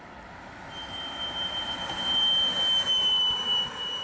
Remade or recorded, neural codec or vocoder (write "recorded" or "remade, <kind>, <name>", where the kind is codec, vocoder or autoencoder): recorded